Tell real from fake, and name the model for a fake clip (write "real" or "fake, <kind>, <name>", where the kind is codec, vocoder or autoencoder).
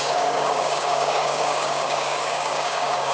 fake, codec, DAC